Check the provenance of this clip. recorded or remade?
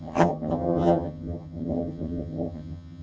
remade